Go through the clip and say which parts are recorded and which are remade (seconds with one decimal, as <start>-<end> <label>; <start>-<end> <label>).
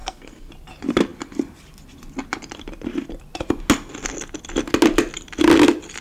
0.0-0.5 remade; 0.5-6.0 recorded